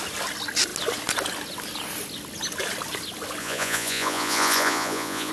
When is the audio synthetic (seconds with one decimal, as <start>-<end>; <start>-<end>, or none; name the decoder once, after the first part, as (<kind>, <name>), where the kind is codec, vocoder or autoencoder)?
3.4-5.3 (vocoder, Vocos)